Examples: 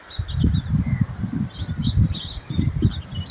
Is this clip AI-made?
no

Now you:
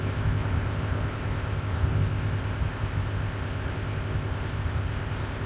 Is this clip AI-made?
yes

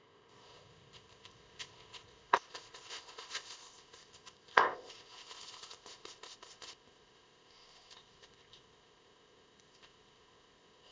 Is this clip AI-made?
yes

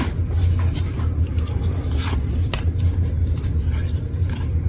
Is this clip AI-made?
no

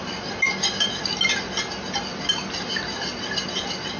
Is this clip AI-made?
no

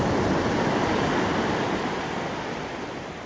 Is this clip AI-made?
no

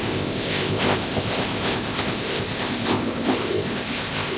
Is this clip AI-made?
yes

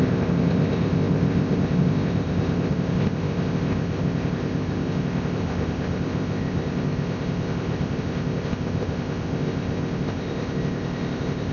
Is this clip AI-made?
yes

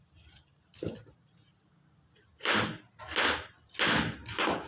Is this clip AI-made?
no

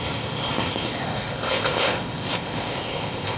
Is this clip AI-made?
yes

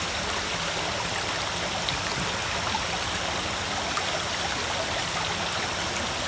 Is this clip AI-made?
no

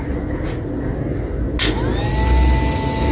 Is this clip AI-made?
no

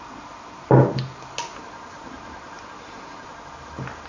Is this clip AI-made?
no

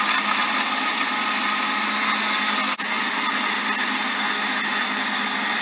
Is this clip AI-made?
no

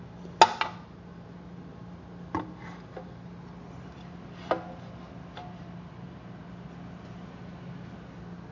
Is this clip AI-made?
no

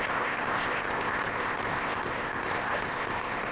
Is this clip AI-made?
yes